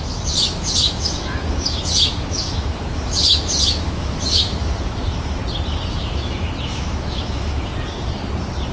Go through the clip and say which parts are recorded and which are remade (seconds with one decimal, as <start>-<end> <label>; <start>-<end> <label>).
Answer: 0.0-5.4 remade; 5.4-5.9 recorded; 5.9-7.7 remade; 7.7-8.7 recorded